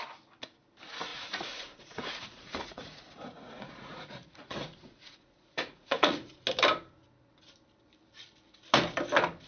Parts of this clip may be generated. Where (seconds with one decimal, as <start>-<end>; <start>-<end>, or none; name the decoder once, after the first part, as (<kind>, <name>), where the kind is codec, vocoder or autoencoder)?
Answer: 1.1-6.4 (vocoder, Vocos)